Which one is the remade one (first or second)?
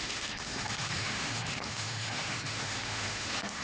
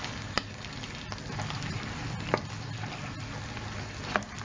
first